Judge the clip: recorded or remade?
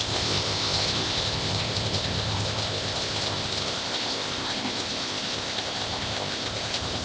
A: remade